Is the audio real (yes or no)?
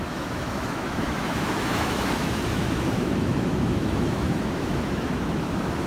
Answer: no